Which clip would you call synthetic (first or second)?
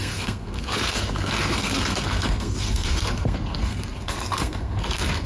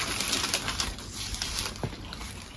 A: first